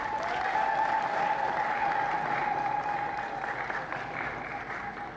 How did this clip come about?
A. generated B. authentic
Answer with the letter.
B